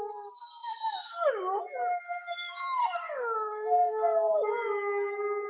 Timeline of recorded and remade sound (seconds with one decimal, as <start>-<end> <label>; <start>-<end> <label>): 0.0-2.8 recorded; 2.8-3.9 remade; 3.9-5.5 recorded